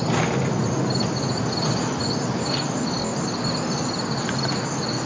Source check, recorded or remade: recorded